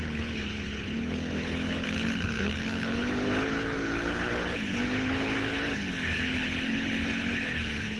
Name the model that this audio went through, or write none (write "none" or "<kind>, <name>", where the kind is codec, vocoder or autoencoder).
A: codec, HILCodec